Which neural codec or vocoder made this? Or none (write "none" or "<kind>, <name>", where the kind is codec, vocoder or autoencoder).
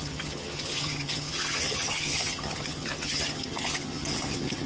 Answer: vocoder, HiFi-GAN